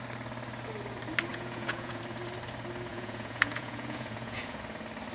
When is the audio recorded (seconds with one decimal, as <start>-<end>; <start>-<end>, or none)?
0.0-1.3; 2.0-2.9; 4.6-5.1